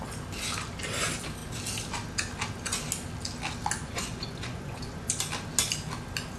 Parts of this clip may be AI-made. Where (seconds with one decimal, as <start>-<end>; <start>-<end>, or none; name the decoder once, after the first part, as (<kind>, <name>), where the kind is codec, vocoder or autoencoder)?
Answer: 3.8-5.1 (vocoder, Vocos)